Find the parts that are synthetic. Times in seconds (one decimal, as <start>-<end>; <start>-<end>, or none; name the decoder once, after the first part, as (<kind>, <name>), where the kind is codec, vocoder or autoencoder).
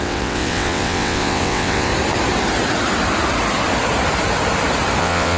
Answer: 0.0-1.9 (vocoder, WaveNeXt); 5.0-5.4